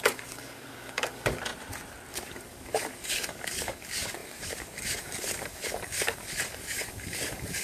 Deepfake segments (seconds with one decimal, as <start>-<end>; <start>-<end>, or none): 0.0-1.5; 2.1-7.6